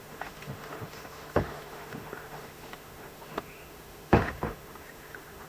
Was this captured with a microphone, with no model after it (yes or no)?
no